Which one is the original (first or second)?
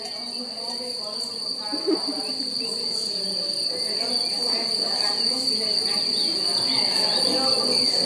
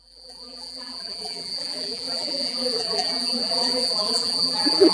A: first